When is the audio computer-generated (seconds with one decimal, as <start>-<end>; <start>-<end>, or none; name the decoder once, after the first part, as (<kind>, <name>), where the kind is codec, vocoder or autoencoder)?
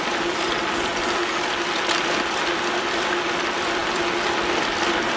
none